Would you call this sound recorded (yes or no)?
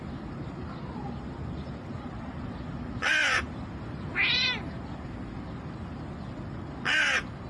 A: yes